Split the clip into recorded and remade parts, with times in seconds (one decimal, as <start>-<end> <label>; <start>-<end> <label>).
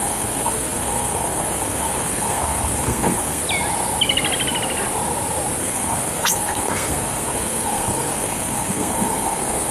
0.0-3.4 remade; 3.4-5.6 recorded; 5.6-9.7 remade